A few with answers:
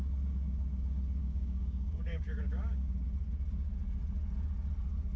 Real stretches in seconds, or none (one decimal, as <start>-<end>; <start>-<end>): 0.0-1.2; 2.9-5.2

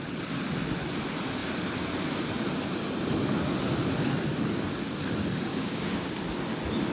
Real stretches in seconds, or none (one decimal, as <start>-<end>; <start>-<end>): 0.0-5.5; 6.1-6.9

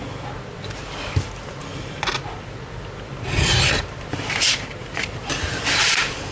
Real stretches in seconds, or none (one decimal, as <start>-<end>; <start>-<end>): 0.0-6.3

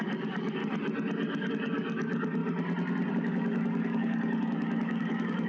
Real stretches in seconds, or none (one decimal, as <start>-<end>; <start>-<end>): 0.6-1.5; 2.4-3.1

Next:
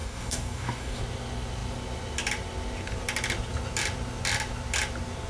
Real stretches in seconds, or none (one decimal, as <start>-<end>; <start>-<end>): 1.0-5.3